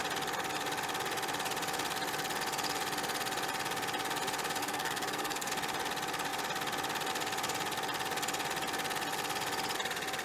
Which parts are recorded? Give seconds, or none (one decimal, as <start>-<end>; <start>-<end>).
0.0-4.6; 5.5-10.2